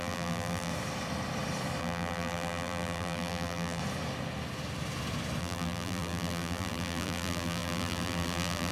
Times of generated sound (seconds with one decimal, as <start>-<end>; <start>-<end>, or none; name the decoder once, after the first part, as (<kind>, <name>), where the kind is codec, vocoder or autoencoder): 0.0-0.7 (vocoder, BigVGAN v2); 1.8-3.8; 5.4-8.7